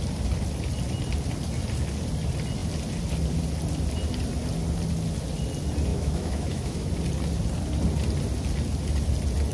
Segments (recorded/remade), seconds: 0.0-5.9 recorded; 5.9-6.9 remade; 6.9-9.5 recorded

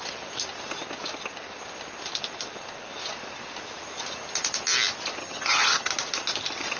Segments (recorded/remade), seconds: 0.0-5.2 recorded; 5.2-5.9 remade; 5.9-6.8 recorded

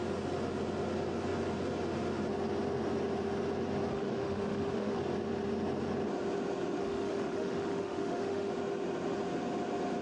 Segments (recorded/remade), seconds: 0.0-3.9 recorded; 3.9-5.0 remade; 5.0-6.8 recorded; 6.8-8.5 remade; 8.5-10.0 recorded

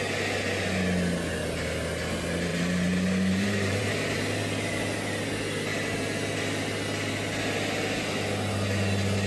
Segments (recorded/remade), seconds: 0.0-2.5 recorded; 2.5-3.9 remade; 3.9-9.3 recorded

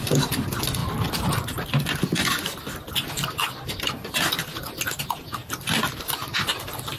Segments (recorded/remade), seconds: 0.0-0.8 recorded; 0.8-5.0 remade; 5.0-5.4 recorded; 5.4-7.0 remade

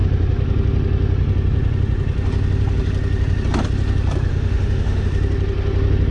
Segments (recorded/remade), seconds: 0.0-4.3 recorded; 4.3-5.1 remade; 5.1-6.1 recorded

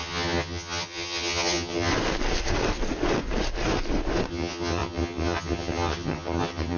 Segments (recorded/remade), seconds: 0.0-1.9 remade; 1.9-4.3 recorded; 4.3-6.8 remade